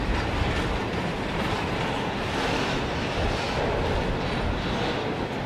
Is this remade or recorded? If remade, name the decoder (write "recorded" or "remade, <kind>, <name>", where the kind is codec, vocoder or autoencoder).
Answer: recorded